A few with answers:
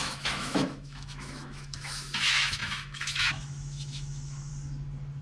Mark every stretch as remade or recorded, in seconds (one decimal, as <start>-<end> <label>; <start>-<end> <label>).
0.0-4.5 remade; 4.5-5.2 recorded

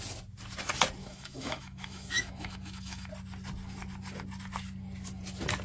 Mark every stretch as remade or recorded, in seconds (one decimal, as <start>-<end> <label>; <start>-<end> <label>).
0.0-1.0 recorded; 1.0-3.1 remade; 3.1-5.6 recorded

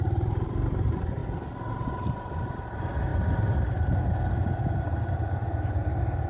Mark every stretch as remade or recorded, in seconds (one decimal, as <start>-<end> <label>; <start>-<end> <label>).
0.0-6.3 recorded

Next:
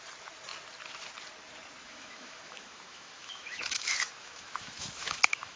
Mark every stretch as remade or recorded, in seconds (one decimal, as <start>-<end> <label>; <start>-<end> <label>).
0.0-1.8 recorded; 1.8-5.6 remade